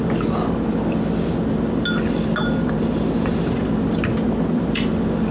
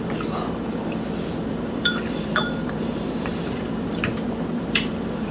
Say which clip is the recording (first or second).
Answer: first